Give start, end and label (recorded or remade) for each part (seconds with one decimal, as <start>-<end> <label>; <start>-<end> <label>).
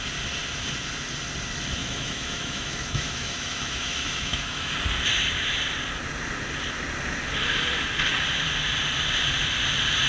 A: 0.0-1.8 recorded; 1.8-4.7 remade; 4.7-10.1 recorded